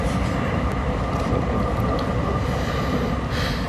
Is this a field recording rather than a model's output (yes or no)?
yes